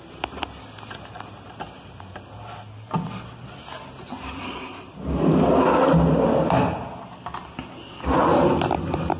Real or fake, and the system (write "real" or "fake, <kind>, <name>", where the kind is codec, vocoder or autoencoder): real